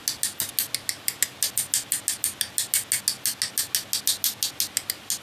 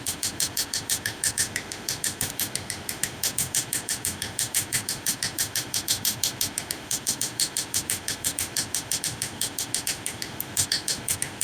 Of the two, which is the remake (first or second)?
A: second